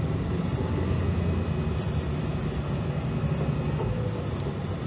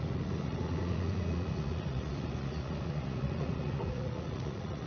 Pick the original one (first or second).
first